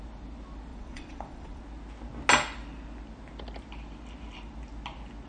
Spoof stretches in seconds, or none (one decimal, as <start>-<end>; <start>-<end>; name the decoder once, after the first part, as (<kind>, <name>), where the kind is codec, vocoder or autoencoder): 0.7-1.6 (vocoder, WaveNeXt)